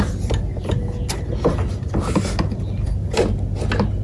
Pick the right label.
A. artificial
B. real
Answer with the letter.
B